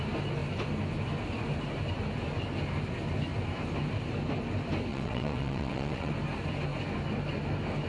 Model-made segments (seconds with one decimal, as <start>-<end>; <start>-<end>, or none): 4.9-6.1